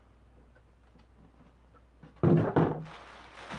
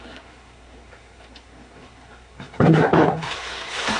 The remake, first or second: second